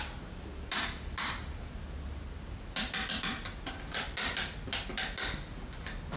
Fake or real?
real